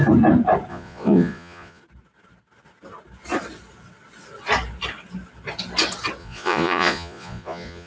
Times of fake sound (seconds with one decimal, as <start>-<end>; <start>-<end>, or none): 0.7-1.8; 6.2-7.9